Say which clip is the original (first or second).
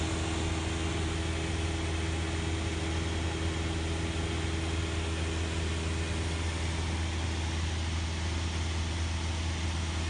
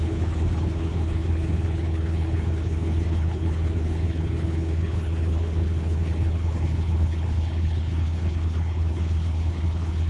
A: first